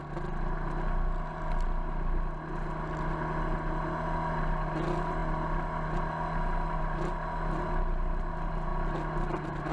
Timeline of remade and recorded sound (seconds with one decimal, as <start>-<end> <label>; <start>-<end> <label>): 0.0-9.7 recorded